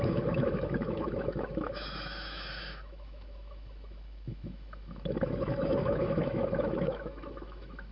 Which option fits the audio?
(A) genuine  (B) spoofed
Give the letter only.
B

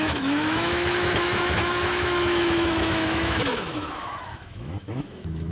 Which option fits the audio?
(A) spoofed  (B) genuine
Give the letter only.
A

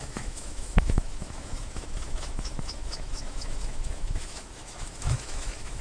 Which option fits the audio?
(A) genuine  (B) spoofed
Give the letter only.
B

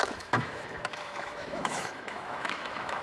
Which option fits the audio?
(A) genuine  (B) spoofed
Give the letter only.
B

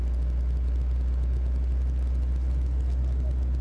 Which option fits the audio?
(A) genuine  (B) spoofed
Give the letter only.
A